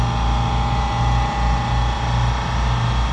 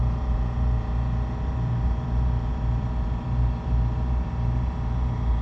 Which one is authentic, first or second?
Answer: first